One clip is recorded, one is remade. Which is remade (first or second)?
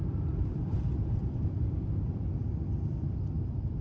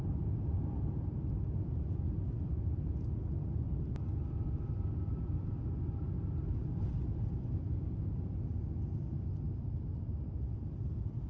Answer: first